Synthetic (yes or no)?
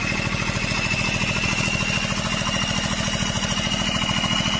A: no